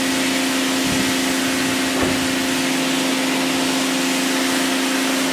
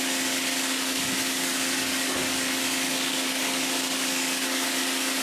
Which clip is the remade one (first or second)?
second